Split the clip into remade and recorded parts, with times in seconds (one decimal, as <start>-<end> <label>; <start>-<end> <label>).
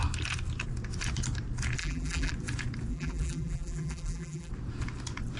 0.0-1.8 recorded; 1.8-2.3 remade; 2.3-2.9 recorded; 2.9-4.5 remade; 4.5-5.4 recorded